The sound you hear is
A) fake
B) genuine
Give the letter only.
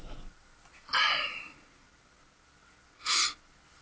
B